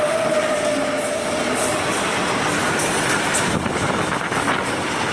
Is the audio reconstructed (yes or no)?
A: no